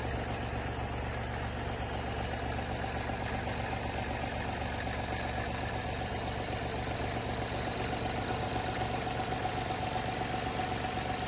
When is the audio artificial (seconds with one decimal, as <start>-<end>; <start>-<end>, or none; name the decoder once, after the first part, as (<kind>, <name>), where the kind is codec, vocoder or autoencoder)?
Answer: none